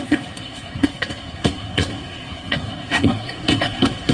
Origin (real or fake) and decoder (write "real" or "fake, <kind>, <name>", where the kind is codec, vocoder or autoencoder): fake, codec, SNAC